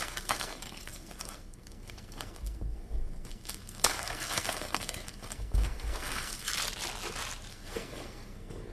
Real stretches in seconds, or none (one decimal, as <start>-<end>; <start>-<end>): 6.5-7.5